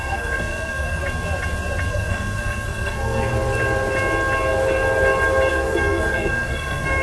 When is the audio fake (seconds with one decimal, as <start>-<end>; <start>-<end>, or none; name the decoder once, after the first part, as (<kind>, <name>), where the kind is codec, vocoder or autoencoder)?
0.0-1.0 (codec, SNAC); 1.9-3.3; 5.5-7.0